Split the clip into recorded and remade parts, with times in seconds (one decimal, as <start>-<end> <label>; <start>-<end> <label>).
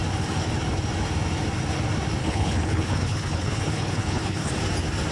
0.0-2.2 recorded; 2.2-4.5 remade; 4.5-5.1 recorded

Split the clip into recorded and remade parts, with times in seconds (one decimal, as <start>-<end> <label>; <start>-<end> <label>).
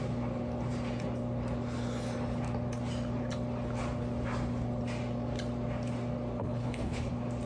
0.0-6.4 recorded; 6.4-7.1 remade; 7.1-7.5 recorded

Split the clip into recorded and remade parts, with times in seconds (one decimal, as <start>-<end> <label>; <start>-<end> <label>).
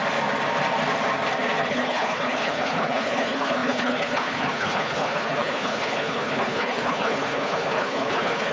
0.0-1.7 recorded; 1.7-8.5 remade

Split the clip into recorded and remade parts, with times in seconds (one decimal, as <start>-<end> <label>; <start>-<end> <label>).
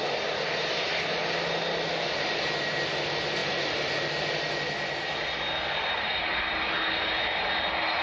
0.0-8.0 recorded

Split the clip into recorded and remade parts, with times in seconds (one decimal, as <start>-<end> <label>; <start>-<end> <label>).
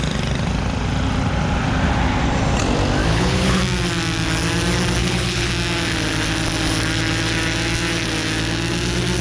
0.0-3.1 recorded; 3.1-3.6 remade; 3.6-5.0 recorded; 5.0-5.5 remade; 5.5-9.2 recorded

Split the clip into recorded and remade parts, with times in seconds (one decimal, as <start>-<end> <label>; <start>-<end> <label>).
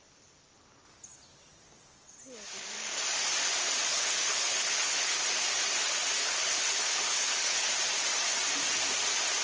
0.0-3.9 recorded; 3.9-5.2 remade; 5.2-6.2 recorded; 6.2-7.7 remade; 7.7-9.4 recorded